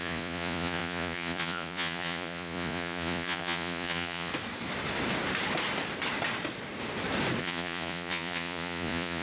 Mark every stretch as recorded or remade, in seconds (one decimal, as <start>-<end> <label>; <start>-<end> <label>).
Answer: 0.0-4.3 remade; 4.3-7.4 recorded; 7.4-9.2 remade